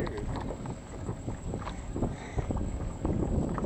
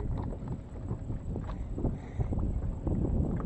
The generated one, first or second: first